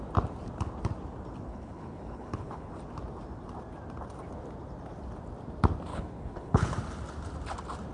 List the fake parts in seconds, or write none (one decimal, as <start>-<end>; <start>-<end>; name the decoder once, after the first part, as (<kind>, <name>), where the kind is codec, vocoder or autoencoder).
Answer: 1.5-2.7 (codec, HILCodec); 5.9-6.7